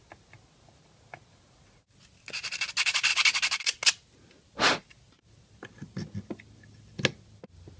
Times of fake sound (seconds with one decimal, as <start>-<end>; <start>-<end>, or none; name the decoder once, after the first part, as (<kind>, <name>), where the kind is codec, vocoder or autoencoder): none